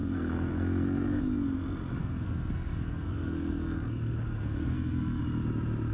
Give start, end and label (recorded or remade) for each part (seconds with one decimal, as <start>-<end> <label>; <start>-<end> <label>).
0.0-1.2 remade; 1.2-2.0 recorded; 2.0-5.2 remade; 5.2-5.9 recorded